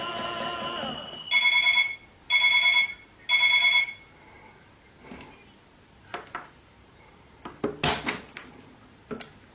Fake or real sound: real